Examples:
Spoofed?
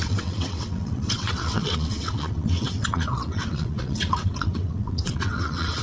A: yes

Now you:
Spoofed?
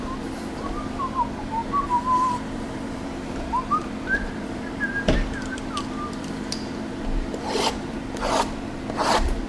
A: yes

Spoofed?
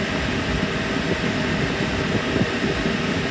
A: no